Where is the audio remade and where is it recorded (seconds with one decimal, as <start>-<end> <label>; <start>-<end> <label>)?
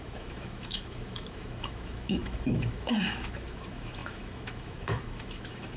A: 0.0-5.8 remade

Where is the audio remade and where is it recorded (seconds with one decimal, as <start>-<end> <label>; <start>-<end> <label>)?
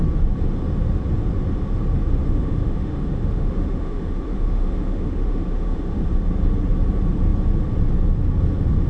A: 0.0-2.2 recorded; 2.2-6.1 remade; 6.1-8.9 recorded